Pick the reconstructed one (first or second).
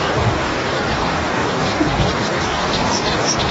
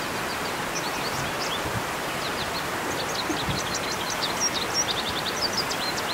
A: first